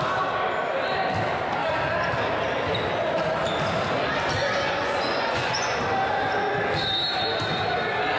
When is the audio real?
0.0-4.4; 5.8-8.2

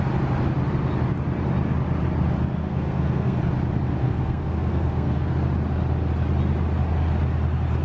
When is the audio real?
0.0-2.6; 3.4-4.0; 5.3-7.8

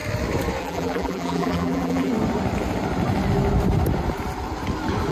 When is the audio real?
0.0-0.6; 2.1-5.1

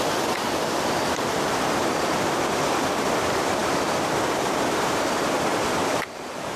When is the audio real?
0.0-5.5

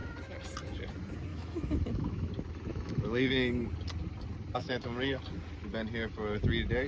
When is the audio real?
0.0-1.3; 2.3-2.7; 3.3-4.6; 5.2-6.9

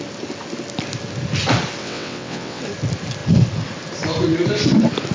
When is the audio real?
0.0-1.8; 2.6-5.1

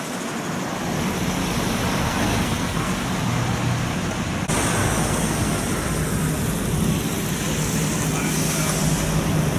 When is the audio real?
0.0-2.0; 2.9-4.8; 5.5-9.6